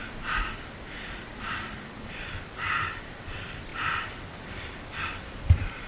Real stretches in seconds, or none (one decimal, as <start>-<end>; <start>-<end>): 0.0-1.1; 3.7-5.0